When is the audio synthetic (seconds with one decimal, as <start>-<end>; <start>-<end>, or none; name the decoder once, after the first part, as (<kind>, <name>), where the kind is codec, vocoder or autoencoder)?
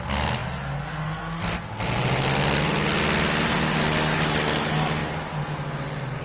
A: none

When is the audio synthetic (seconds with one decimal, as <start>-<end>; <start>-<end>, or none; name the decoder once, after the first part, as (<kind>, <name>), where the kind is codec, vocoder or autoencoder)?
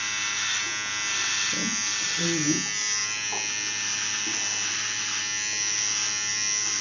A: none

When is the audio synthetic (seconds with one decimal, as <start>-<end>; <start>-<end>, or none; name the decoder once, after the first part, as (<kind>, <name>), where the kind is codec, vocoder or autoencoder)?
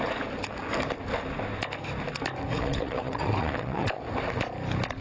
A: 2.5-4.0 (vocoder, WaveNeXt)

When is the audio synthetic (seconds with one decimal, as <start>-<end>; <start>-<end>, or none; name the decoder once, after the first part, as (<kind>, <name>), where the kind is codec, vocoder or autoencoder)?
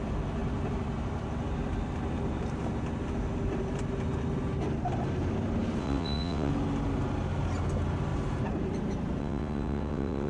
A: 5.8-6.5 (vocoder, WaveNeXt); 9.2-10.3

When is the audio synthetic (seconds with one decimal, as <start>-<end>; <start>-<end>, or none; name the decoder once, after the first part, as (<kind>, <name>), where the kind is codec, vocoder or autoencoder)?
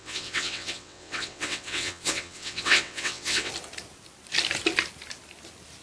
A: 0.0-3.5 (vocoder, WaveNeXt)